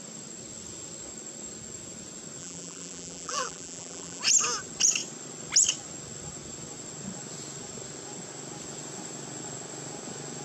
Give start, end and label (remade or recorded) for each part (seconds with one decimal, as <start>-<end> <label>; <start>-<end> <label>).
0.0-2.4 recorded; 2.4-4.2 remade; 4.2-10.4 recorded